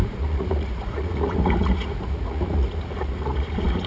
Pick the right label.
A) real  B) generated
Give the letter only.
B